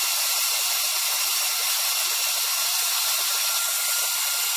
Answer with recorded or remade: recorded